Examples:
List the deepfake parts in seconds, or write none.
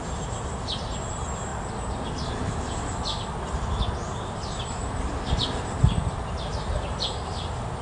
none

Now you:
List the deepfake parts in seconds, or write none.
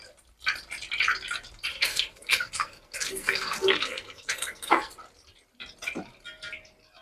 1.7-4.9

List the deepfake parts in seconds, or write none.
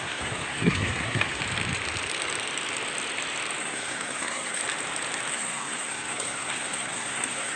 0.0-1.4; 3.6-4.6; 5.3-7.6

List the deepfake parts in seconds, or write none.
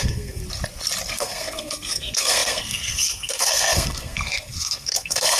0.0-0.4; 1.1-5.4